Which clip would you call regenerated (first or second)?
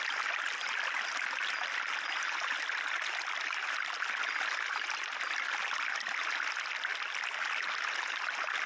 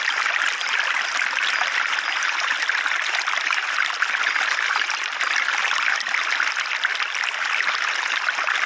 second